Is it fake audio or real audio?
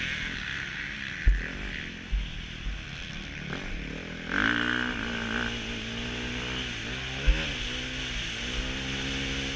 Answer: real